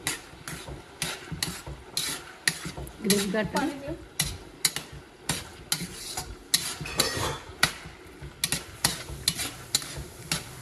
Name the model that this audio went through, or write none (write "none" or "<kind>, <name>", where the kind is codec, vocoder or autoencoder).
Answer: none